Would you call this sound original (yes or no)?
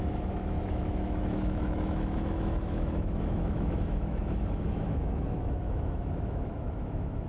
no